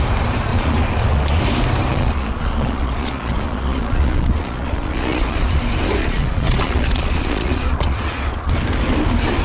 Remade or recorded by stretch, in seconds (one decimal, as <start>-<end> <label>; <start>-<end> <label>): 0.0-0.5 recorded; 0.5-1.4 remade; 1.4-1.9 recorded; 1.9-5.6 remade; 5.6-6.0 recorded; 6.0-8.5 remade; 8.5-9.4 recorded